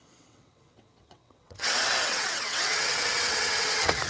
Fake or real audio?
fake